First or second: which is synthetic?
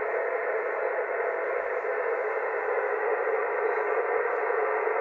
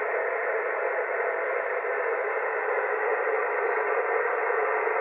second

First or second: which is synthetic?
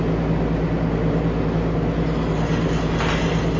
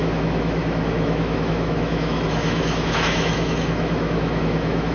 second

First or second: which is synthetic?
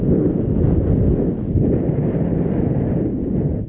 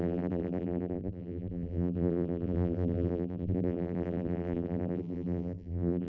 second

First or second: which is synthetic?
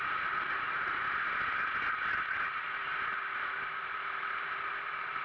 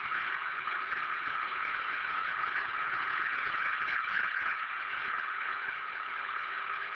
second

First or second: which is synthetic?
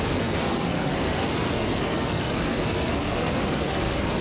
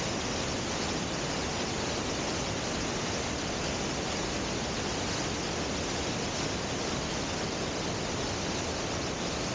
first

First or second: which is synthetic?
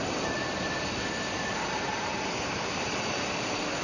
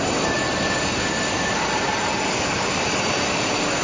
first